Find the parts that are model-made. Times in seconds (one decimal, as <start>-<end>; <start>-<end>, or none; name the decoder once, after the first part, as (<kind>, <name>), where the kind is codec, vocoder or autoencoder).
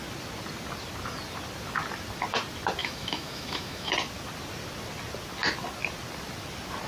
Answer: 2.8-3.9 (autoencoder, DAC-VAE)